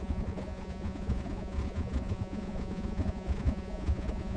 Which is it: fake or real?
fake